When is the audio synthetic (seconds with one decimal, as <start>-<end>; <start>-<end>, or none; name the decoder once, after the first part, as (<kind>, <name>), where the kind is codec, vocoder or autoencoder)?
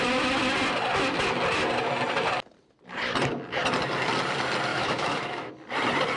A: 4.7-5.5 (autoencoder, DAC-VAE)